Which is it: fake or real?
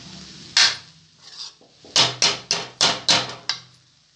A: real